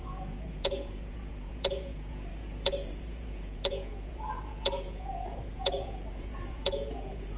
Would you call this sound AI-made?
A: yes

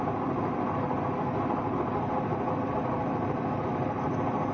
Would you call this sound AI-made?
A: no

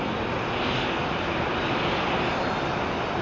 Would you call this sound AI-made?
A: no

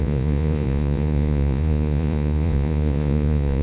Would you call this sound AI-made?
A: yes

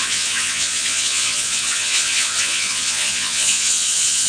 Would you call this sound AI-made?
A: yes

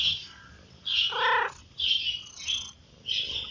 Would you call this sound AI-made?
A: no